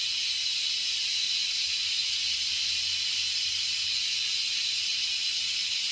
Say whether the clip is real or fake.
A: real